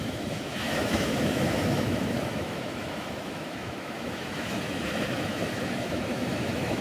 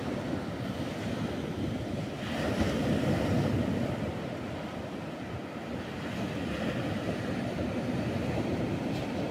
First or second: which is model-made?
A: first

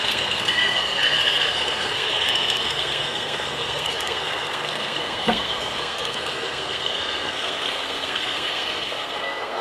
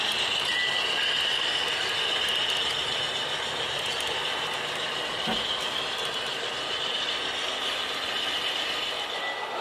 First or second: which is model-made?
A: first